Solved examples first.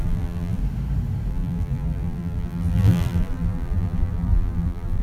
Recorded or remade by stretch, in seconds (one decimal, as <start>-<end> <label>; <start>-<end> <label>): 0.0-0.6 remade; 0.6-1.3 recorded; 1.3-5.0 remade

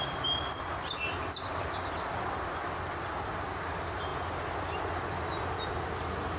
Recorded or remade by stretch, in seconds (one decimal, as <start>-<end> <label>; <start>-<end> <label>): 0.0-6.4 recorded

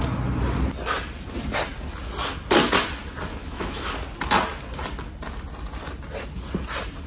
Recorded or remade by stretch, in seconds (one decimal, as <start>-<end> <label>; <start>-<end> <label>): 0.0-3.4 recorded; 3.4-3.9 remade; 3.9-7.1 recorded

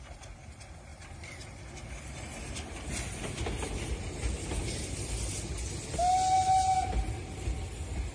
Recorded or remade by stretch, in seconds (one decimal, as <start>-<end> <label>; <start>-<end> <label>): 0.0-0.9 recorded; 0.9-1.6 remade; 1.6-8.1 recorded

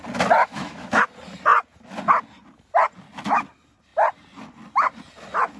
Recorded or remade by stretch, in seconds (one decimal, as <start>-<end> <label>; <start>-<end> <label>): 0.0-0.4 recorded; 0.4-1.0 remade; 1.0-5.6 recorded

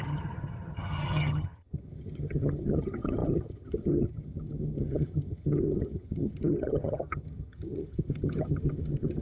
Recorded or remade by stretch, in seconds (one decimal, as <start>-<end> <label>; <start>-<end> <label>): 0.0-9.2 remade